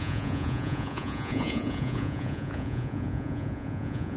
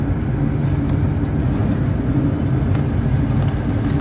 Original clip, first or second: second